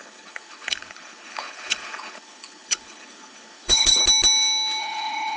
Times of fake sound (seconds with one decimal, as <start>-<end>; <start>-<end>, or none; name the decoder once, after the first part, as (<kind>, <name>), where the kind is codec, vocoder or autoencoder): 0.0-4.0 (codec, HILCodec); 4.8-5.4